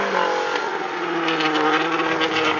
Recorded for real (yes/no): yes